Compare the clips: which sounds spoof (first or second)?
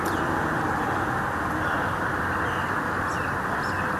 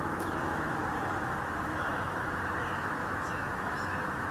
second